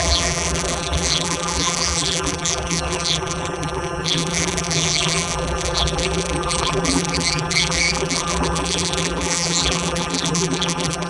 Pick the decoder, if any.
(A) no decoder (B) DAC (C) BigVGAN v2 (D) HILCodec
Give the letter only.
C